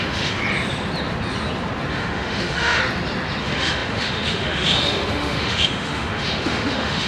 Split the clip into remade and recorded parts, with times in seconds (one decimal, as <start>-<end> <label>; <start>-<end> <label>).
0.0-0.4 remade; 0.4-1.9 recorded; 1.9-2.8 remade; 2.8-3.4 recorded; 3.4-7.1 remade